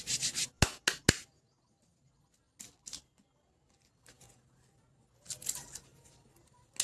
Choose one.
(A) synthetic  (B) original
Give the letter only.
B